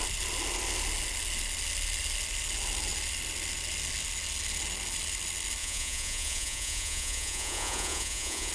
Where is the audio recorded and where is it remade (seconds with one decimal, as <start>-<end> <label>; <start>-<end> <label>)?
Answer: 0.0-5.6 recorded; 5.6-8.5 remade